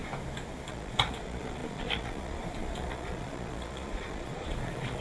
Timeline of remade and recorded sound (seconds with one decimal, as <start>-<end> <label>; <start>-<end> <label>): 0.0-0.7 recorded; 0.7-5.0 remade